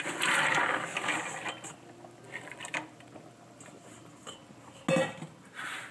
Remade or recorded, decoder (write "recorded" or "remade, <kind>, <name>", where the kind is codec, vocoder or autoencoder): recorded